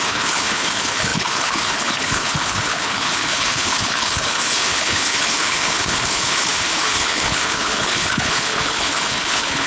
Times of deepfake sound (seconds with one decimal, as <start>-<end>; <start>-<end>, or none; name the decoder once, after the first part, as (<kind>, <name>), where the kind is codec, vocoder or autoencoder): 0.0-9.7 (codec, HILCodec)